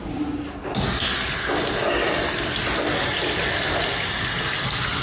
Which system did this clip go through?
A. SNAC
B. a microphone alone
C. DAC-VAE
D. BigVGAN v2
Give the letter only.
B